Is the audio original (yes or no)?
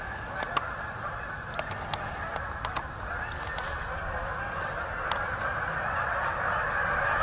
yes